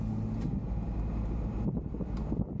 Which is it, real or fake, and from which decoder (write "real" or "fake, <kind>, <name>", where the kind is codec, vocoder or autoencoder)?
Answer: real